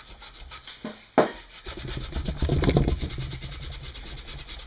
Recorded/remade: recorded